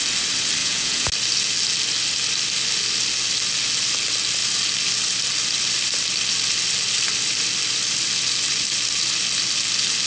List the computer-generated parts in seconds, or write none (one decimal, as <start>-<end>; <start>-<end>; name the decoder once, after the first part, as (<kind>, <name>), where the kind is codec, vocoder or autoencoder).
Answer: 0.6-1.1 (vocoder, Vocos)